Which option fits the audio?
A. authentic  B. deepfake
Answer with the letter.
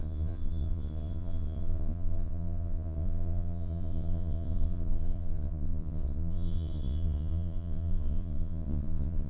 B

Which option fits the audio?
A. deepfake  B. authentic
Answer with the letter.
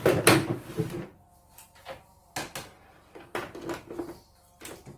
B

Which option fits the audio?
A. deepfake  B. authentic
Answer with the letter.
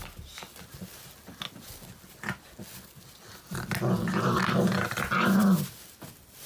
B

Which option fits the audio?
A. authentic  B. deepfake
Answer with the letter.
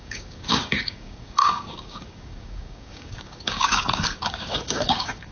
B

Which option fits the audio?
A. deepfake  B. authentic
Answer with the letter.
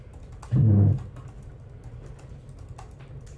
B